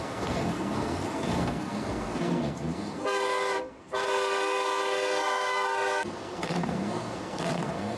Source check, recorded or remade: remade